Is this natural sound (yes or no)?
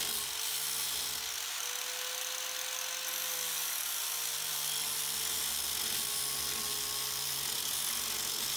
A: yes